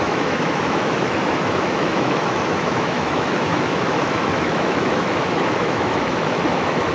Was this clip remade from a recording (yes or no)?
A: yes